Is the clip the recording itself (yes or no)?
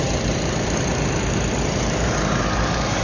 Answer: no